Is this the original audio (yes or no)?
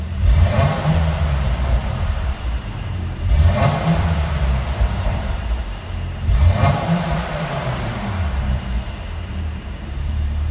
no